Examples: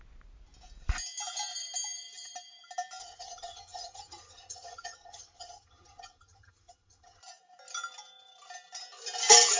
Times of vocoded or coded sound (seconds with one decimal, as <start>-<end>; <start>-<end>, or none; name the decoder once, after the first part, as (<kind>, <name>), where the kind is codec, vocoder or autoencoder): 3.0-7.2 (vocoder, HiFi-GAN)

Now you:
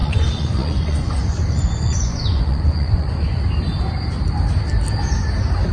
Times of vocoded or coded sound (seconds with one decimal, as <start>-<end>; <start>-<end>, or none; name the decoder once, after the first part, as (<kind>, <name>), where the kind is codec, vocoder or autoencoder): 0.0-3.4 (vocoder, Vocos)

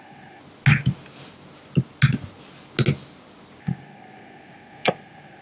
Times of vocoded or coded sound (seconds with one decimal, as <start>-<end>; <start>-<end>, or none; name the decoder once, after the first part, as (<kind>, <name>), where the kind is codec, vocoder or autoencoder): 0.0-0.4 (codec, SNAC); 3.6-5.4

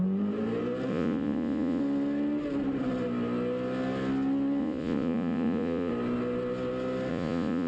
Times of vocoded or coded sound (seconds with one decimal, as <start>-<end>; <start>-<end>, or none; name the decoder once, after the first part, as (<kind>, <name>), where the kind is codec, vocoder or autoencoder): 0.9-1.8 (vocoder, Vocos); 4.6-5.9; 7.1-7.7

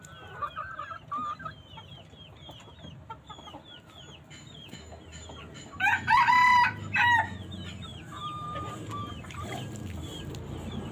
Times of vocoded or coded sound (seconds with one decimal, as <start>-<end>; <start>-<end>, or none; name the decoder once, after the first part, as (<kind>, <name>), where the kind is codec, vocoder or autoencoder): none